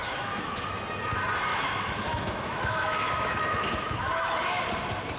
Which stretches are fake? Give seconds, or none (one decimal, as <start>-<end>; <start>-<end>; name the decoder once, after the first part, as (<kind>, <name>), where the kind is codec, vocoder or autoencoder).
0.0-0.7 (autoencoder, DAC-VAE); 1.5-4.6